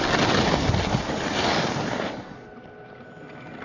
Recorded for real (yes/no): yes